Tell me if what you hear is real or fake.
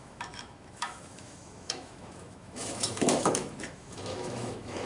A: fake